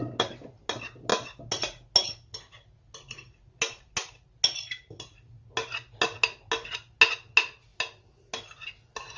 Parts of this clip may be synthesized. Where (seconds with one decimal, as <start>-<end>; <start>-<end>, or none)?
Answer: none

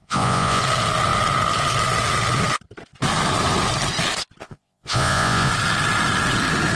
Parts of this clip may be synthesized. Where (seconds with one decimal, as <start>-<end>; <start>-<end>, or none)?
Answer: 0.0-0.6; 4.4-5.5

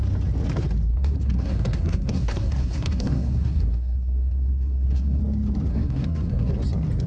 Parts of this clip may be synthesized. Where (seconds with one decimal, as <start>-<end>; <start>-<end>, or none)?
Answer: 0.9-5.2; 5.7-6.5

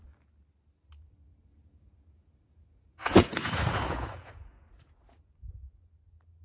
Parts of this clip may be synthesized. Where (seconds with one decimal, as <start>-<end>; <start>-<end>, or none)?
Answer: 1.5-5.3

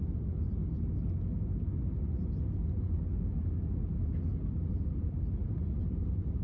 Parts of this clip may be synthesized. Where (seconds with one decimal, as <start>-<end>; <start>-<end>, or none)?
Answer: none

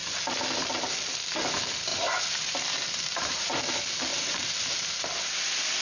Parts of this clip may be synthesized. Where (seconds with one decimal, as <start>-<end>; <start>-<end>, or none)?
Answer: 1.9-3.6; 4.1-5.0

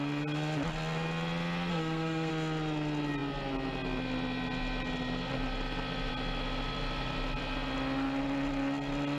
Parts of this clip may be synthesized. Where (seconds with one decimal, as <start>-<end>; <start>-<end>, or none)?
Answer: 1.7-2.3